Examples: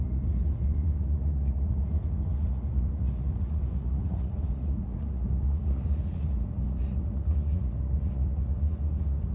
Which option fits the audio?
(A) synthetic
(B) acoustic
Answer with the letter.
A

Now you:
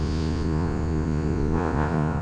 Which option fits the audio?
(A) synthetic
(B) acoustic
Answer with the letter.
A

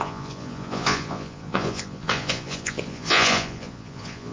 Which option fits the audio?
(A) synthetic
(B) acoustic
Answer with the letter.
A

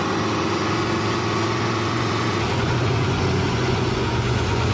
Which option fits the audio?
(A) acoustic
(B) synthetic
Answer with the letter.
B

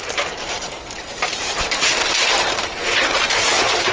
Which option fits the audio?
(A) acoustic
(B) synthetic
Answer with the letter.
B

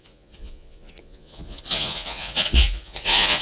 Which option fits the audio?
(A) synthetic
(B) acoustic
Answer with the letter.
A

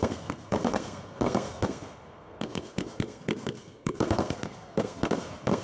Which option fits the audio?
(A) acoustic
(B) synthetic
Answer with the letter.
B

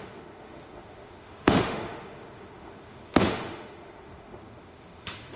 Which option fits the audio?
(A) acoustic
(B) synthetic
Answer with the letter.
B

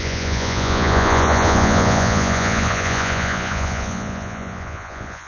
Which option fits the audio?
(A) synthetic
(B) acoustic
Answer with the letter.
A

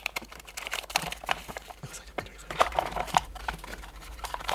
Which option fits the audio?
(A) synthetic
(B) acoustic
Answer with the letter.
A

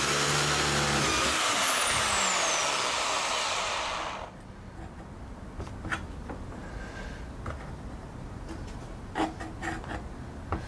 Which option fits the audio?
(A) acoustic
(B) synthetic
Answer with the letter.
A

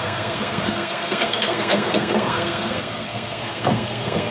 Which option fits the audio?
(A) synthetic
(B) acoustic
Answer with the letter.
A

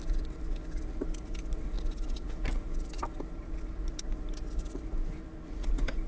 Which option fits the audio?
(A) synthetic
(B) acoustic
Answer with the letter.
B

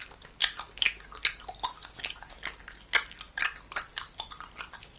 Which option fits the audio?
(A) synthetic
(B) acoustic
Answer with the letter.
B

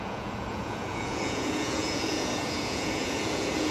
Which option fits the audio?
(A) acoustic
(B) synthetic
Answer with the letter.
B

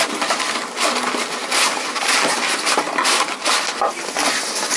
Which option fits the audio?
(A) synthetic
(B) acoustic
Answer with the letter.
B